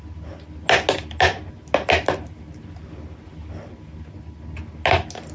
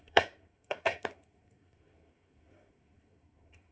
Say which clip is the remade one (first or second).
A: second